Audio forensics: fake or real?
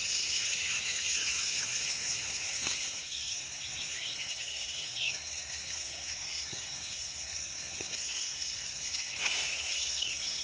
fake